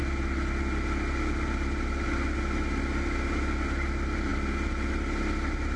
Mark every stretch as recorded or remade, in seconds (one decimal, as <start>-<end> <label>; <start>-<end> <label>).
0.0-5.8 recorded